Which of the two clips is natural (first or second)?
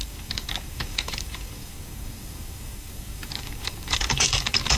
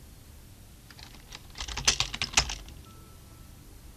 second